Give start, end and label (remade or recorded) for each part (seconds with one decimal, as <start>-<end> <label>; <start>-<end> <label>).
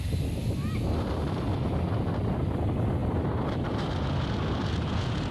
0.0-3.0 recorded; 3.0-3.9 remade; 3.9-5.3 recorded